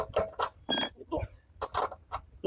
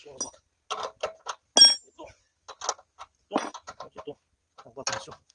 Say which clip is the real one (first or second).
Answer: second